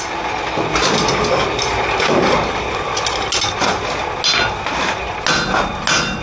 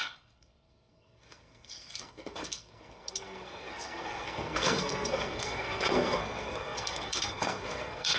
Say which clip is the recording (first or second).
first